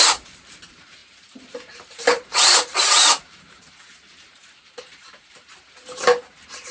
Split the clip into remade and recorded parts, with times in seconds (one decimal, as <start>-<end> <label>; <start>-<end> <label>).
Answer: 0.0-6.7 remade